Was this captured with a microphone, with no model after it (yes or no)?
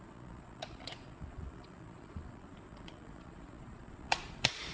no